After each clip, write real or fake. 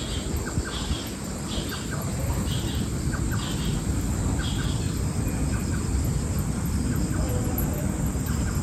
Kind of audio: real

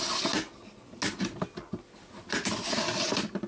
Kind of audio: real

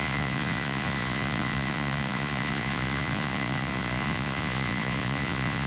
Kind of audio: fake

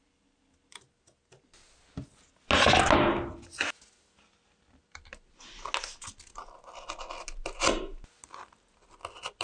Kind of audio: real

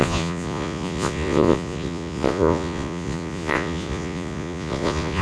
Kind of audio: fake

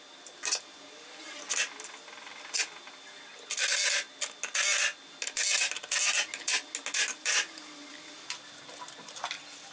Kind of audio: real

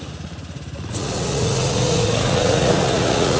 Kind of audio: fake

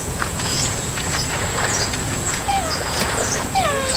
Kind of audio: fake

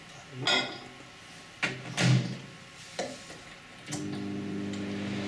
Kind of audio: real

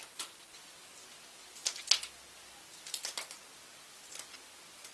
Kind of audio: real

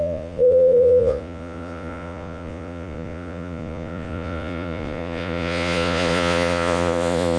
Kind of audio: fake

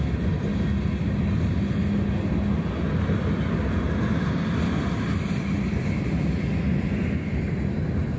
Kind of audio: real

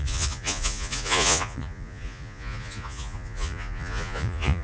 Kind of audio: fake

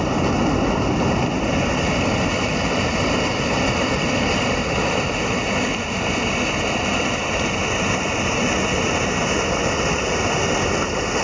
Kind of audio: real